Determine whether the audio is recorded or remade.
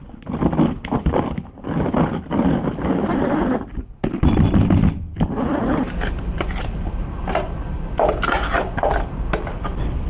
recorded